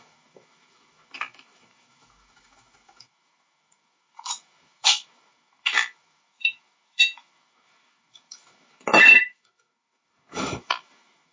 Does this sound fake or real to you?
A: fake